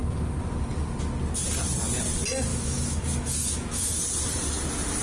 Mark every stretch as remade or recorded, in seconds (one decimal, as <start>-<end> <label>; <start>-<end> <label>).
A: 0.0-2.5 recorded; 2.5-4.0 remade; 4.0-5.0 recorded

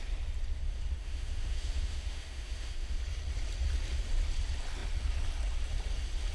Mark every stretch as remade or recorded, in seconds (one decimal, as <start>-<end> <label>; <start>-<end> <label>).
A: 0.0-1.0 recorded; 1.0-3.0 remade; 3.0-6.3 recorded

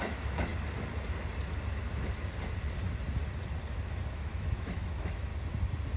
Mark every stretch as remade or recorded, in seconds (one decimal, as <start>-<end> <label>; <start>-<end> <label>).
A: 0.0-0.5 remade; 0.5-4.1 recorded; 4.1-5.3 remade; 5.3-6.0 recorded

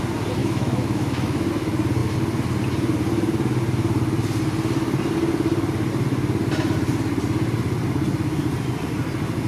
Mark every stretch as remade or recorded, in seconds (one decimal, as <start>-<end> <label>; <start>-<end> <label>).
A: 0.0-0.4 recorded; 0.4-1.5 remade; 1.5-9.5 recorded

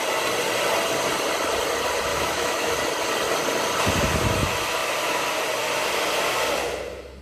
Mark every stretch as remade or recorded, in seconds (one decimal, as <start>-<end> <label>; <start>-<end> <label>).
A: 0.0-2.1 recorded; 2.1-2.7 remade; 2.7-7.2 recorded

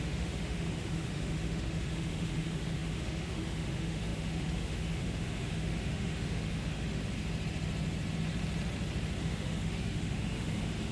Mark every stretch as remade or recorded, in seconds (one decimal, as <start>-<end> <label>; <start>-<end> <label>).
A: 0.0-7.0 remade; 7.0-9.2 recorded; 9.2-10.9 remade

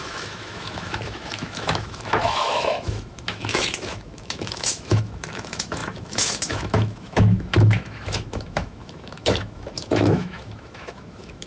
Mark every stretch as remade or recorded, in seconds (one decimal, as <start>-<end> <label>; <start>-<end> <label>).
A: 0.0-11.5 remade

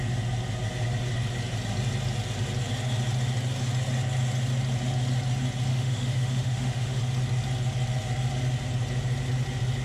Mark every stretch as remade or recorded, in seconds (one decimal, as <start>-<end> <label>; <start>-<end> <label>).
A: 0.0-5.7 recorded; 5.7-7.0 remade; 7.0-9.8 recorded